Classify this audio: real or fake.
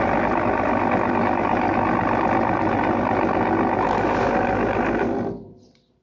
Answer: real